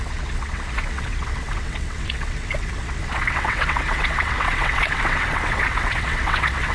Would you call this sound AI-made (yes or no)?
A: yes